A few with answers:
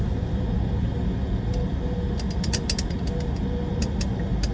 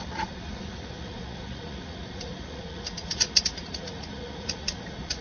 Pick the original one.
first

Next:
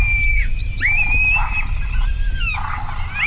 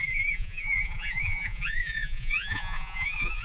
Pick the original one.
first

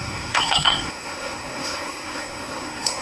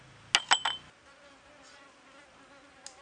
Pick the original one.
second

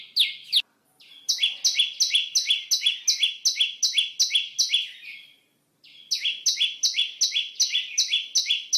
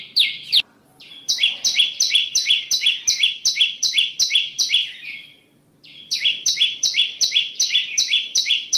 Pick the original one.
first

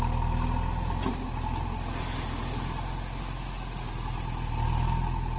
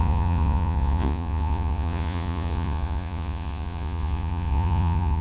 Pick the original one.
first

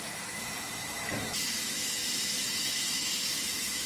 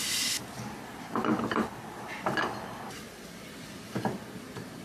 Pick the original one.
second